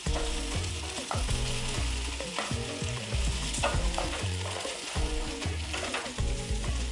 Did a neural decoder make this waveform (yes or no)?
yes